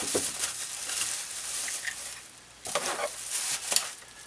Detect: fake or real real